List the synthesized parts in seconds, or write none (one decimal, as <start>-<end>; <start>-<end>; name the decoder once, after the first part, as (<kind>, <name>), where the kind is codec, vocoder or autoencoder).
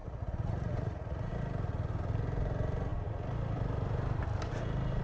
0.0-1.3 (vocoder, Vocos)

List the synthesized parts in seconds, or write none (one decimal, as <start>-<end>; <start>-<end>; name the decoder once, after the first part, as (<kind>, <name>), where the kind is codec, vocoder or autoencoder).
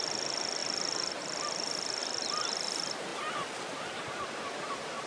none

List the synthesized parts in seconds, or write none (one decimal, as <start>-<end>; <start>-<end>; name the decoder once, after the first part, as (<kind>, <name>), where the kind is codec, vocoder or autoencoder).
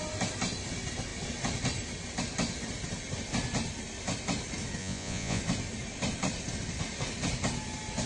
4.8-5.4 (vocoder, Vocos)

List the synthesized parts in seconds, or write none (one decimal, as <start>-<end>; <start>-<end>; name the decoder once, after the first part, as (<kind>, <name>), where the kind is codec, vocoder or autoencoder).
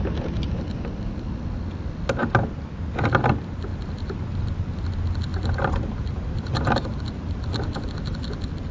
5.3-6.8 (vocoder, BigVGAN v2)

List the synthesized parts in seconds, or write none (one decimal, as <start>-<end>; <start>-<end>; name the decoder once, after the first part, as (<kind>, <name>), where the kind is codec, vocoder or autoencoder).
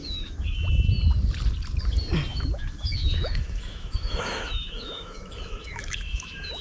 0.0-0.9 (autoencoder, DAC-VAE); 2.3-6.6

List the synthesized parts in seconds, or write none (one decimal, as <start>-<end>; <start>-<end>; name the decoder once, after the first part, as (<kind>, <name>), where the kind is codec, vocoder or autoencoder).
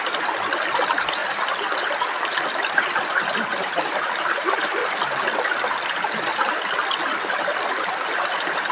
3.5-6.5 (vocoder, BigVGAN v2)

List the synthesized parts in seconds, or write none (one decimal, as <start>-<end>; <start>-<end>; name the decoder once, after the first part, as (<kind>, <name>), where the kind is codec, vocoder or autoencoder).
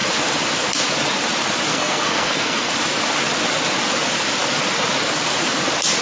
1.7-2.7 (codec, SNAC)